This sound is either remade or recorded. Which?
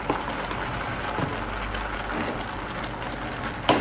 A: recorded